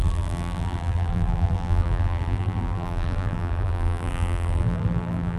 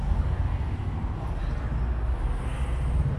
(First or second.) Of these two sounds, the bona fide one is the second